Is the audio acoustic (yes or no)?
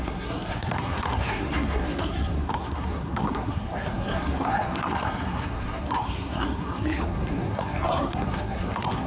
no